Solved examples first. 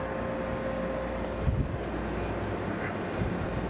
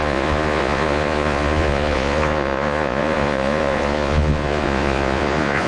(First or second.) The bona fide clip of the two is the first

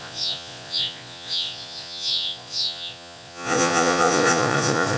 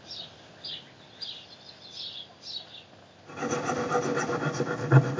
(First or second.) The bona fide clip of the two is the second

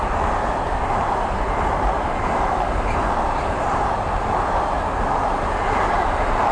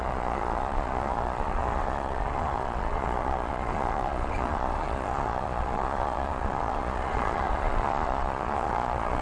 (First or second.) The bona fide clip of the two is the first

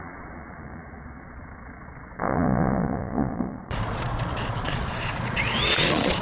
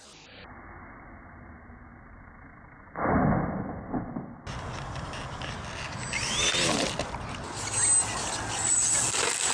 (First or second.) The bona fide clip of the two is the second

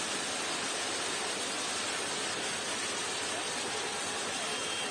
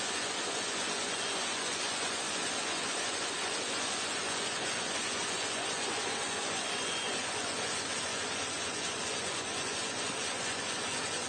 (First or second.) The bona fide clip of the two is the first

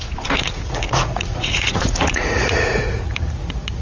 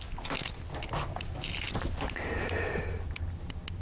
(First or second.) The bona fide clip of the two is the second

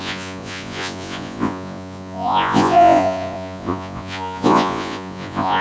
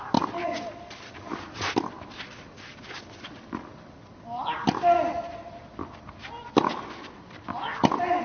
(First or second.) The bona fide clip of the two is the second